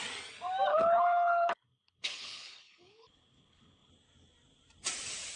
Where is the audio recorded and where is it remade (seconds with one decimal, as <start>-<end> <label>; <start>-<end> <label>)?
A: 0.0-0.7 recorded; 0.7-3.9 remade; 3.9-5.4 recorded